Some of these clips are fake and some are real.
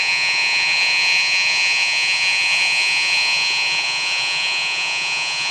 fake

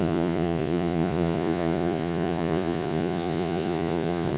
fake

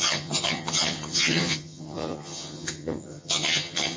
fake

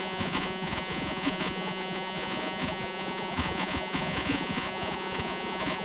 fake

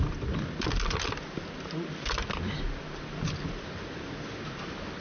real